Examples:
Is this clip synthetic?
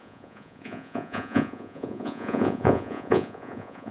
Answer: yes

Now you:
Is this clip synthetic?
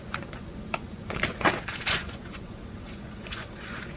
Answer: yes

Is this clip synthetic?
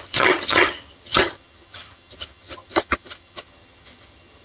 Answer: yes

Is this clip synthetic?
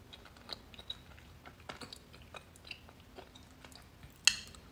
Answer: no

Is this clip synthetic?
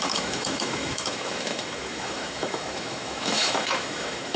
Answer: yes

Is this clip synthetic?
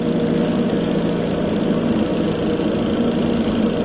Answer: no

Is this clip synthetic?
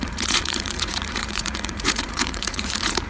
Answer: yes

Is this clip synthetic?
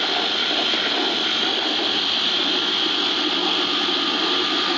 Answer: no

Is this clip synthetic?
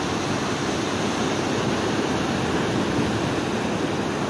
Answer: no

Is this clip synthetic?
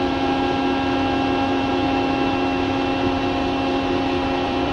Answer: yes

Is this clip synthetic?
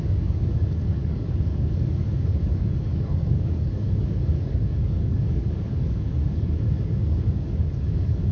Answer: yes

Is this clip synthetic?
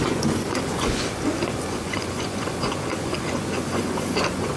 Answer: yes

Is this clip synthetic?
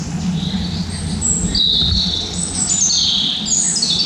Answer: no